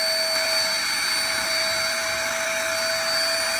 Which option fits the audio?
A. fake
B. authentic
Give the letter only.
B